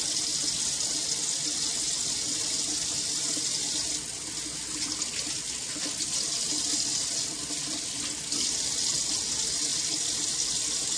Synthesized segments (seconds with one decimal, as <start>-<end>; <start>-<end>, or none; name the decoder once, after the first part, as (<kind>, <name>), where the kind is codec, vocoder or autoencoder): none